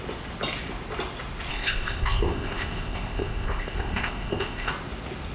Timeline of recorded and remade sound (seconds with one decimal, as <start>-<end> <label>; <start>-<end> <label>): 0.0-1.5 recorded; 1.5-4.7 remade; 4.7-5.3 recorded